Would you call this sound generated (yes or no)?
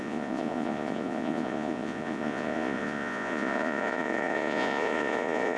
yes